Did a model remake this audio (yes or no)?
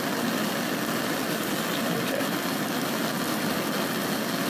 no